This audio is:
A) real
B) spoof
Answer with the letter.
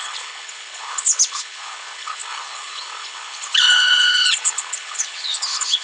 B